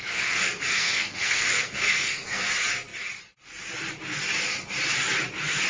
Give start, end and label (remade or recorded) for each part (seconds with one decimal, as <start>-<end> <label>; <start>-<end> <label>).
0.0-2.5 remade; 2.5-5.7 recorded